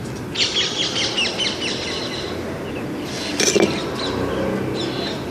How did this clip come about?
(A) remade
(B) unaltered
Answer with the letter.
B